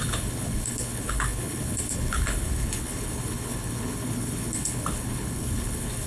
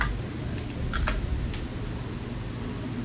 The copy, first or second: first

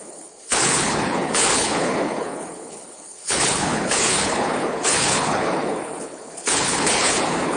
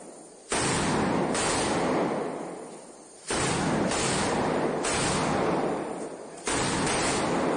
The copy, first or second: first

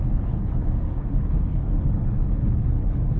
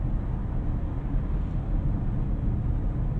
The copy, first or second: first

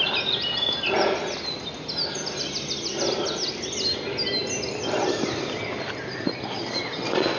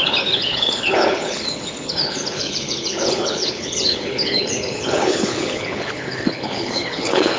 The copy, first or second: second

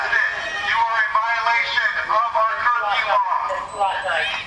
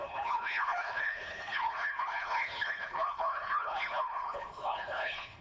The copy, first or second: second